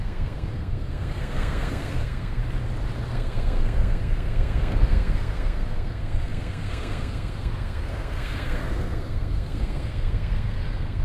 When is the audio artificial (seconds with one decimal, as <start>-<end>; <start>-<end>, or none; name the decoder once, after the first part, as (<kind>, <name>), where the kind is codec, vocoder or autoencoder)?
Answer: 0.0-2.4 (codec, SNAC); 3.1-11.0